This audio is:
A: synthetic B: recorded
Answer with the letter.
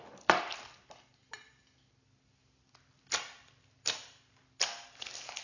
B